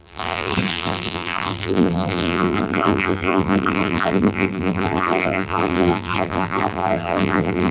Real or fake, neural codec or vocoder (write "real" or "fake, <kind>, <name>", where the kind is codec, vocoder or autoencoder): fake, vocoder, BigVGAN v2